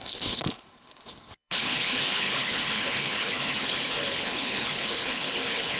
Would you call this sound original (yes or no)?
no